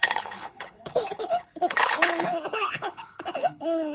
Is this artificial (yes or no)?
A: yes